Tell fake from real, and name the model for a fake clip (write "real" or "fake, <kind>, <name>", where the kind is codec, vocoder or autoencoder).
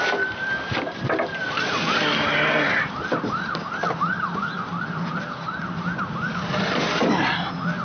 real